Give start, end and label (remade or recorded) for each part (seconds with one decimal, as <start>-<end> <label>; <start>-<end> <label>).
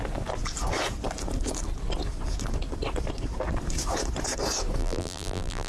0.0-4.8 recorded; 4.8-5.7 remade